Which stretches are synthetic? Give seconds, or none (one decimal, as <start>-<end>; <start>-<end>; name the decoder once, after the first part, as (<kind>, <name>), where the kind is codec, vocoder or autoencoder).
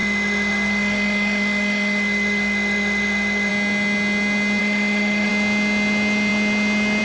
0.0-3.5 (autoencoder, DAC-VAE); 4.6-5.3